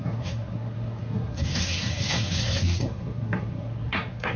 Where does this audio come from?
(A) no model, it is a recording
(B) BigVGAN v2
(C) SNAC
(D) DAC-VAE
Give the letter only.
C